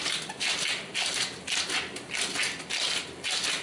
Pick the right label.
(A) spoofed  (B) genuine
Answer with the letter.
B